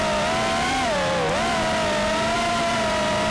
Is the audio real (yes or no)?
yes